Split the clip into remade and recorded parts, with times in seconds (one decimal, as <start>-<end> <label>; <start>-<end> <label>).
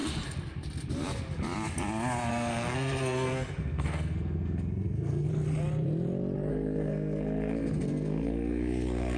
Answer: 0.0-2.3 recorded; 2.3-5.3 remade; 5.3-6.5 recorded; 6.5-9.2 remade